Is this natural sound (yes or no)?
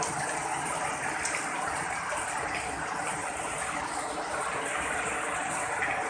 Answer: yes